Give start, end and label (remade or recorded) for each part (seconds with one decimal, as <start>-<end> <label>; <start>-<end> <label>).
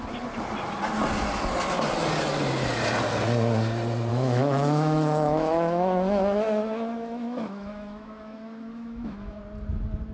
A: 0.0-4.1 recorded; 4.1-9.4 remade; 9.4-10.1 recorded